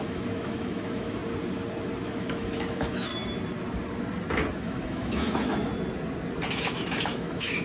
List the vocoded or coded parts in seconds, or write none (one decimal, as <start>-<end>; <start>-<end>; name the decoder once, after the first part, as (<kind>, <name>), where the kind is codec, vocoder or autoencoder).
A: 0.0-1.2 (autoencoder, DAC-VAE); 2.0-3.1; 4.6-5.7; 6.5-7.6